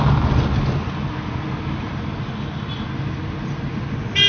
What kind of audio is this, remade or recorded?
recorded